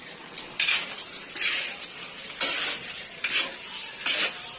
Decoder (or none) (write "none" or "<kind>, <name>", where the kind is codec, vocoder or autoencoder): none